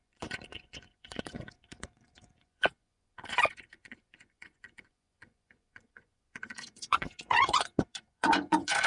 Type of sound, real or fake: fake